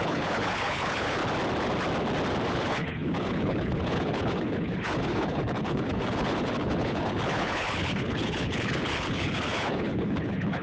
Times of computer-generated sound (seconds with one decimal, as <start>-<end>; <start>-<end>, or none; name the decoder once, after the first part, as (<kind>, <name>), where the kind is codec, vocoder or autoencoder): 0.0-1.2 (codec, HILCodec); 2.5-10.6